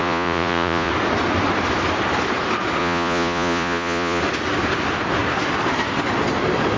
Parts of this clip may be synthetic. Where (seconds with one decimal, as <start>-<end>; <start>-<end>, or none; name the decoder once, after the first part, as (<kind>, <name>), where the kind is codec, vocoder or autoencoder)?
0.0-0.9 (vocoder, Vocos); 2.8-4.2